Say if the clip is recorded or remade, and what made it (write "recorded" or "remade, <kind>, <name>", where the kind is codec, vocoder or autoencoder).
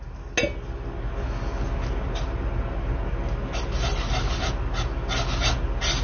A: recorded